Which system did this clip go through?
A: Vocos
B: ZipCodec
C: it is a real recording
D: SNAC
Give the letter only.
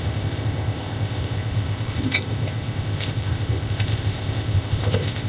B